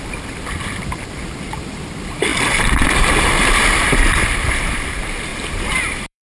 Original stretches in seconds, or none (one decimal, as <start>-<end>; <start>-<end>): 5.3-5.8